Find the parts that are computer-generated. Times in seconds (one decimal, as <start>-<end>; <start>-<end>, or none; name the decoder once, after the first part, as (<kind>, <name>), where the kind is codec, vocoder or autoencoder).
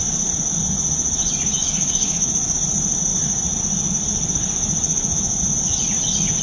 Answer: 1.6-2.6 (codec, DAC)